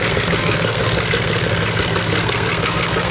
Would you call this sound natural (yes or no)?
no